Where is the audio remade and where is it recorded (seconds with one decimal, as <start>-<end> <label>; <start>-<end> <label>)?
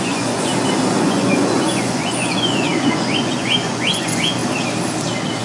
0.0-0.5 remade; 0.5-1.0 recorded; 1.0-4.4 remade; 4.4-5.4 recorded